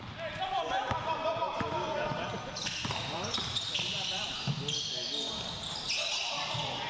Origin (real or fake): real